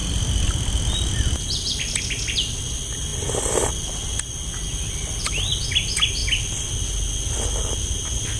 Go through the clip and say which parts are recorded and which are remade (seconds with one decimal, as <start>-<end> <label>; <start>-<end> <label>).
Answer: 0.0-8.4 recorded